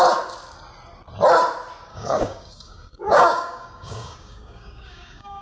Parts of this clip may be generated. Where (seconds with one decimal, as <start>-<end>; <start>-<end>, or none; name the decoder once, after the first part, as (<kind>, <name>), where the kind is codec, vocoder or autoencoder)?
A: 1.9-5.4 (codec, DAC)